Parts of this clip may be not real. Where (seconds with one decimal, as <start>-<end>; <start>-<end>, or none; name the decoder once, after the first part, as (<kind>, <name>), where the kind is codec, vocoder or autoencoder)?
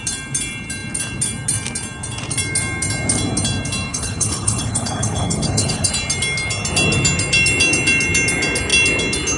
3.9-5.9 (codec, HILCodec)